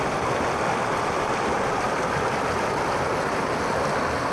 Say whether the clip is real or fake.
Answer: real